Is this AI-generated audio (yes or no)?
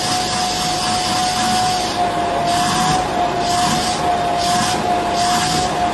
no